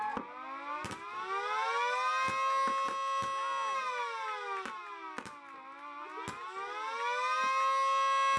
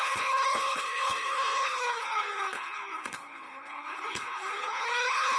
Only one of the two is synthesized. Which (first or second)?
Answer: second